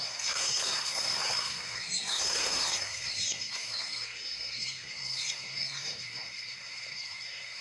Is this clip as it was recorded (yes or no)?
no